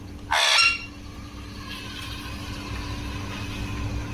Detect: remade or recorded recorded